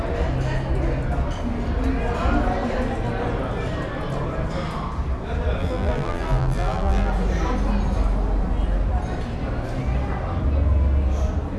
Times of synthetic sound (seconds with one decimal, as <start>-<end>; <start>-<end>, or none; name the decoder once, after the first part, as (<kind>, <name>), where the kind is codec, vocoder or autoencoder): 5.6-7.1 (vocoder, BigVGAN v2)